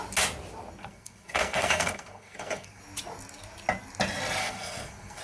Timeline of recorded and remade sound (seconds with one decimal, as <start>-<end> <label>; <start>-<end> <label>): 0.0-0.8 recorded; 0.8-2.8 remade; 2.8-4.4 recorded; 4.4-5.2 remade